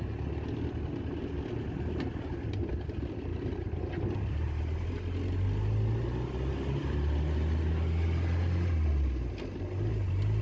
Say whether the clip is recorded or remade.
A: recorded